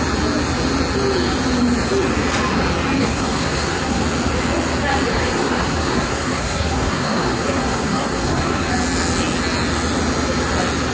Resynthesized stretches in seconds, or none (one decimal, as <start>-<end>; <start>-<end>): 3.0-4.0; 5.1-8.7